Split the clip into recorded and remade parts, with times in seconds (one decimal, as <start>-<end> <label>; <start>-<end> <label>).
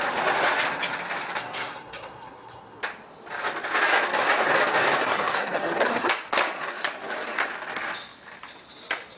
0.0-1.3 recorded; 1.3-2.8 remade; 2.8-5.0 recorded; 5.0-6.1 remade; 6.1-9.2 recorded